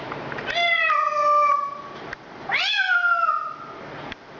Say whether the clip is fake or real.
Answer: real